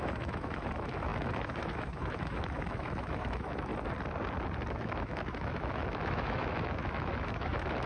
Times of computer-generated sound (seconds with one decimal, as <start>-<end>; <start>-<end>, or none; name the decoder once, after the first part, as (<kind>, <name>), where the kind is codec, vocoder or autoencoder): 0.0-3.7 (autoencoder, DAC-VAE); 4.7-7.9